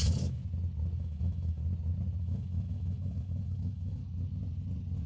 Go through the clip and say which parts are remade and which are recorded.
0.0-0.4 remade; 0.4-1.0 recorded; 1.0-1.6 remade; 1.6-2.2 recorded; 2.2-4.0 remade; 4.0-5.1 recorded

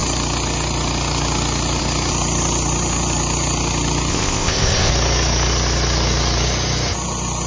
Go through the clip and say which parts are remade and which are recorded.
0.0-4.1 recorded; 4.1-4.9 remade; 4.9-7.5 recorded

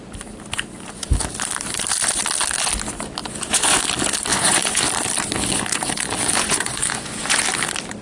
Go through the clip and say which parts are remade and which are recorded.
0.0-3.2 recorded; 3.2-3.8 remade; 3.8-4.3 recorded; 4.3-4.8 remade; 4.8-5.7 recorded; 5.7-7.4 remade; 7.4-8.0 recorded

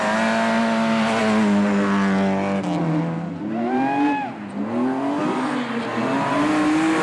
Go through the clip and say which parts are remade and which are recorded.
0.0-7.0 recorded

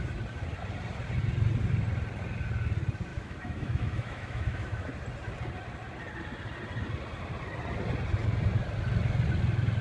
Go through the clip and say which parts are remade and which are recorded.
0.0-3.1 recorded; 3.1-4.9 remade; 4.9-9.8 recorded

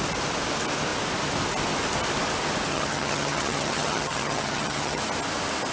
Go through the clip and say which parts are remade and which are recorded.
0.0-2.7 recorded; 2.7-5.0 remade; 5.0-5.7 recorded

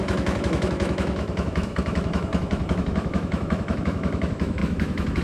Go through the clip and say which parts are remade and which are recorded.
0.0-5.2 remade